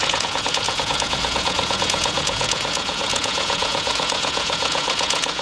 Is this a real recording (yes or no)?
no